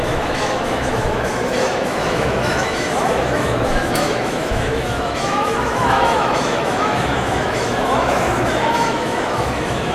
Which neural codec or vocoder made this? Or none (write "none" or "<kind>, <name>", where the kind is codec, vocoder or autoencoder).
autoencoder, DAC-VAE